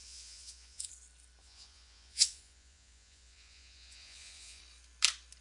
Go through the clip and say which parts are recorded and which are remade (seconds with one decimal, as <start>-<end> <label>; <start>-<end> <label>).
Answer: 0.0-0.9 remade; 0.9-1.4 recorded; 1.4-4.6 remade; 4.6-5.4 recorded